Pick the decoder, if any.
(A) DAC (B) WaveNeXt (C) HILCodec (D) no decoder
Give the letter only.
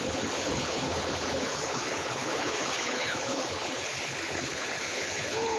C